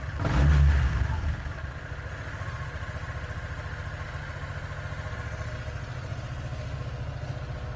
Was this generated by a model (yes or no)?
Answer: no